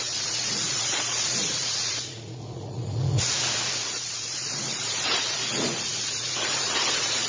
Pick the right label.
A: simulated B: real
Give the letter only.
A